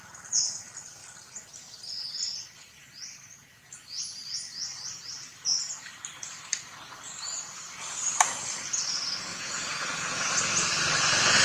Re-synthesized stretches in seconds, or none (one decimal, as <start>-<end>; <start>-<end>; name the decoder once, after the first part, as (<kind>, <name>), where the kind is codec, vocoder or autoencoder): 9.3-10.3 (vocoder, Vocos)